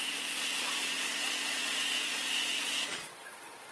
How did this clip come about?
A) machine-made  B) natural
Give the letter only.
A